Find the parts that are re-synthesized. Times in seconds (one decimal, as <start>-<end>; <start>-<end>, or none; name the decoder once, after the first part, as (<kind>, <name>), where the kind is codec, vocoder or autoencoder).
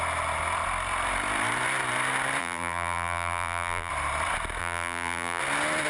2.4-3.9 (vocoder, BigVGAN v2); 4.6-5.4